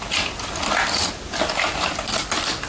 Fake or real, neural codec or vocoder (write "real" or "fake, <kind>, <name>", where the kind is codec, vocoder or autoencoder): real